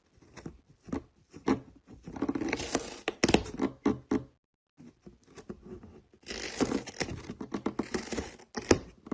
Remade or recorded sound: recorded